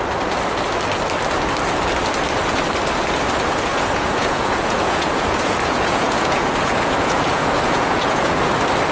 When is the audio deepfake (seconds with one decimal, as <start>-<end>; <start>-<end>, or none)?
3.7-8.5